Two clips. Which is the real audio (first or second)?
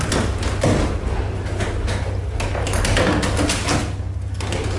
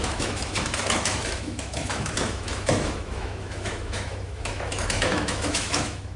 first